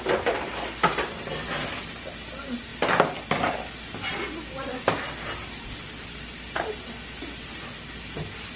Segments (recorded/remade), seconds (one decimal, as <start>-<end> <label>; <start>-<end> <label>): 0.0-8.6 recorded